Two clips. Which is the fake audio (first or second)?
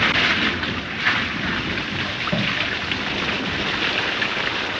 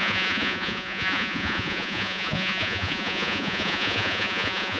second